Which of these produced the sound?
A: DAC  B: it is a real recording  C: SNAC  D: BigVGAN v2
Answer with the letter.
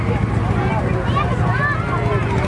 B